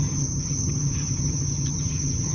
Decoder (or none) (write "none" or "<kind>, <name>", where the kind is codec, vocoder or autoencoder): vocoder, HiFi-GAN